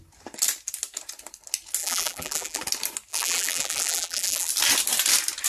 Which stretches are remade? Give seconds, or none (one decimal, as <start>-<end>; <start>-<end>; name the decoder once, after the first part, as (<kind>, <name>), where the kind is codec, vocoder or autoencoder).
1.8-2.6 (vocoder, BigVGAN v2); 3.1-4.5